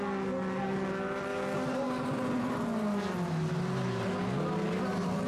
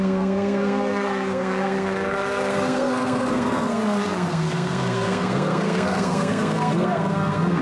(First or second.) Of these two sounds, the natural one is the first